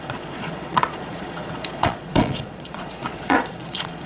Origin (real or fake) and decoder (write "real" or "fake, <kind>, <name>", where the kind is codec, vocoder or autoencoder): fake, vocoder, Vocos